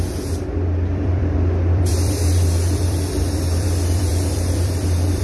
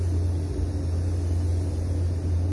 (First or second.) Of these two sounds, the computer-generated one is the first